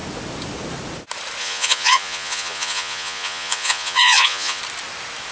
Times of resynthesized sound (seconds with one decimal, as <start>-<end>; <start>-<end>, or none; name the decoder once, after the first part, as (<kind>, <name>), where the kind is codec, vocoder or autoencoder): 1.4-4.6 (vocoder, Vocos)